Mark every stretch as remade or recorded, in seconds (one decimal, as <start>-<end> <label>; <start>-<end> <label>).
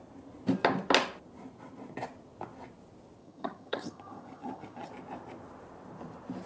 0.0-3.2 recorded; 3.2-4.9 remade; 4.9-6.5 recorded